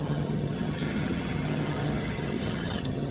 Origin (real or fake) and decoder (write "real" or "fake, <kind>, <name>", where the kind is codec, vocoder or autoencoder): fake, vocoder, HiFi-GAN